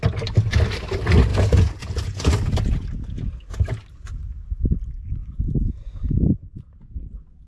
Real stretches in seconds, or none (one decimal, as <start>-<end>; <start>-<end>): 0.0-1.3; 2.3-7.5